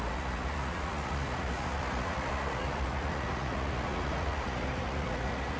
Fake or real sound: fake